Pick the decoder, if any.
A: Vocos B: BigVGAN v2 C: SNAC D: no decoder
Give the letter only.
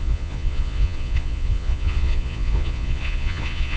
A